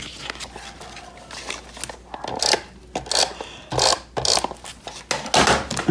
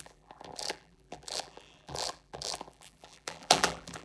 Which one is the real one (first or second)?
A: first